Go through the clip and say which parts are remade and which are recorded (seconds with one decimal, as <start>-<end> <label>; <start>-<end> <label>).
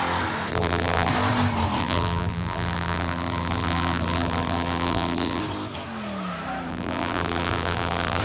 0.0-0.5 recorded; 0.5-1.1 remade; 1.1-1.8 recorded; 1.8-5.4 remade; 5.4-6.7 recorded; 6.7-8.2 remade